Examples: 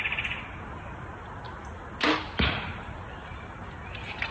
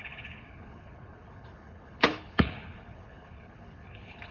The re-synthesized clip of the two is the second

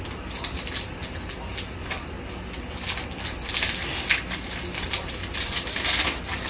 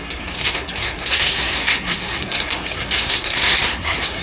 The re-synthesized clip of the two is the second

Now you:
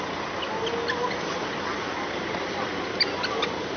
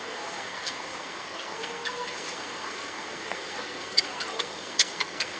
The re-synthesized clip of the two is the second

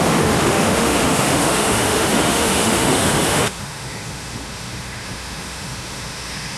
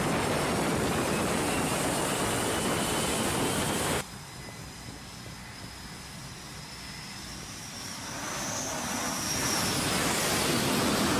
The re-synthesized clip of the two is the first